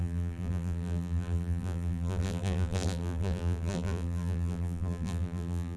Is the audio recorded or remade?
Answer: remade